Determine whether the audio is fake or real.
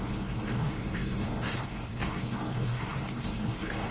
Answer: fake